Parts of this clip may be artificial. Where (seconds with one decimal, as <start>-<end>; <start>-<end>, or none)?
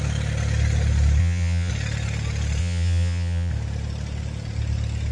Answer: 1.2-1.7; 2.6-3.5